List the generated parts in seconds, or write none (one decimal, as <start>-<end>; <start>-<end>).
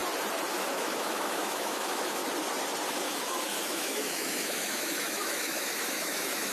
0.5-2.2; 2.9-6.5